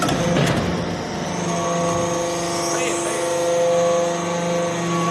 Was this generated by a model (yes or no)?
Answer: no